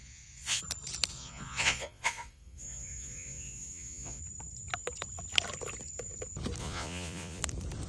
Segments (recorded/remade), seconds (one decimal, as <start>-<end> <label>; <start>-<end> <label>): 0.0-0.6 remade; 0.6-1.1 recorded; 1.1-4.2 remade; 4.2-6.6 recorded; 6.6-7.4 remade; 7.4-7.9 recorded